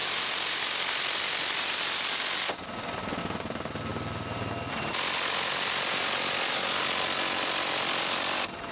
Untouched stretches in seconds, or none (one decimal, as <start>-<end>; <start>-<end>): 0.0-8.7